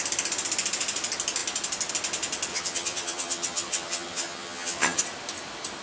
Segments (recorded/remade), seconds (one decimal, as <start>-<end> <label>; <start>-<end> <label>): 0.0-2.5 recorded; 2.5-5.0 remade; 5.0-5.8 recorded